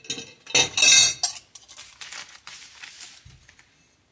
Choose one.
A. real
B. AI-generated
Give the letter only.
A